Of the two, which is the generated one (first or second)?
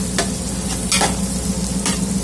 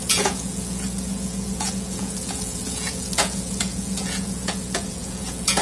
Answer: second